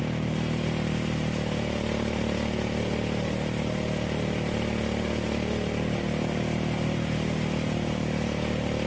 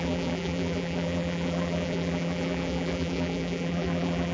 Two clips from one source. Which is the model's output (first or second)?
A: second